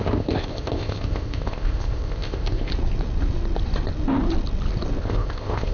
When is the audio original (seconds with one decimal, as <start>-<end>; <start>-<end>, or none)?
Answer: 2.7-5.0